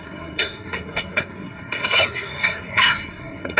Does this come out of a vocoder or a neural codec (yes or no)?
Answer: yes